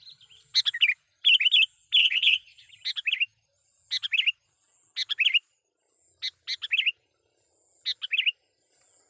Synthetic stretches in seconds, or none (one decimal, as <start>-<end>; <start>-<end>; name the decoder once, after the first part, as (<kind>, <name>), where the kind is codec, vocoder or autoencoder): 2.0-2.7 (vocoder, WaveNeXt)